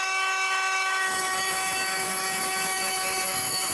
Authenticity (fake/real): fake